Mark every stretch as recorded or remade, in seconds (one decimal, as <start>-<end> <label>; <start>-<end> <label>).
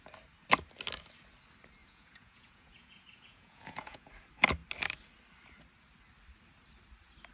0.0-1.8 recorded; 1.8-4.1 remade; 4.1-7.3 recorded